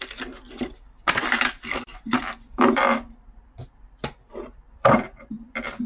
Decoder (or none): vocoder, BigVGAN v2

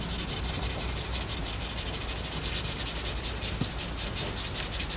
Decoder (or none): none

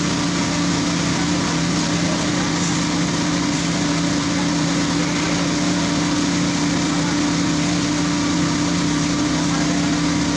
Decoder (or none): none